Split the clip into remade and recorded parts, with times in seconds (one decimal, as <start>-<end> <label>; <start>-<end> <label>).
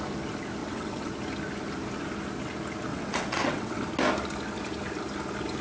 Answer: 0.0-0.6 recorded; 0.6-1.1 remade; 1.1-2.9 recorded; 2.9-3.8 remade; 3.8-5.6 recorded